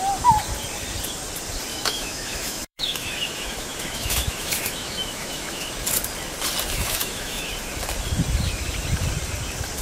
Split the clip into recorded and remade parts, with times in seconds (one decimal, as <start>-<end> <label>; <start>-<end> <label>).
0.0-1.7 recorded; 1.7-5.7 remade; 5.7-6.8 recorded; 6.8-7.5 remade; 7.5-9.8 recorded